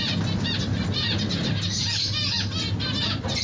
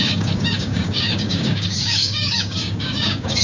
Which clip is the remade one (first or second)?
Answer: second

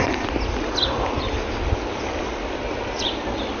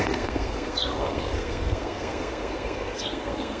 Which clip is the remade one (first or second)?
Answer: second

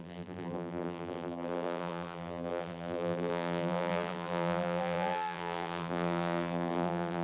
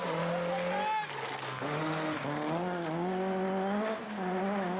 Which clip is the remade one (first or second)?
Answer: first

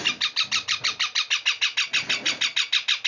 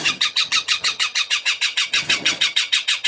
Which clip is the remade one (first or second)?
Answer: second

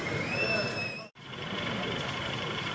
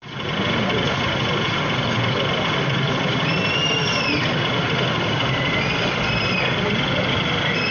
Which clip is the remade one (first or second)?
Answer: first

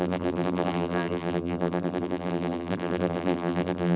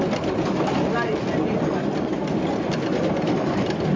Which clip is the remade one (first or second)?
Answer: first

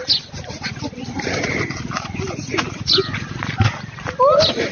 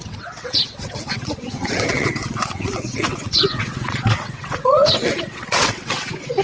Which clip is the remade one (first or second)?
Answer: second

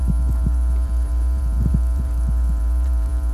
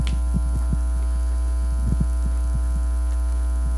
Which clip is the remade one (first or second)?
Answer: first